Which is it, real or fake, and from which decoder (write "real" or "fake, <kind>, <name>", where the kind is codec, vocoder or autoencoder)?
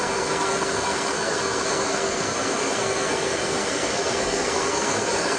fake, codec, SNAC